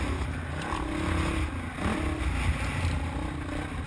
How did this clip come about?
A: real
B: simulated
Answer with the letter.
A